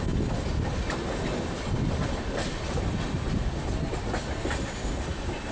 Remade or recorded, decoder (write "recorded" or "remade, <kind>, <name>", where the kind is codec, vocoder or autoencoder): recorded